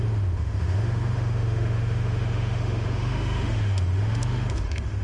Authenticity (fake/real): fake